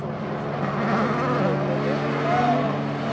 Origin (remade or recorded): recorded